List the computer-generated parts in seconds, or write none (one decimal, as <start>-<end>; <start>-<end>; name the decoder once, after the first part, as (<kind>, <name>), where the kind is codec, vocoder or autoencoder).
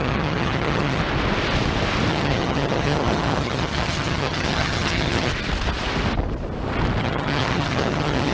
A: 0.0-1.0 (vocoder, HiFi-GAN); 2.1-5.3; 7.0-8.3